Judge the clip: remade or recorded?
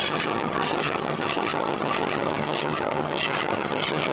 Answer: remade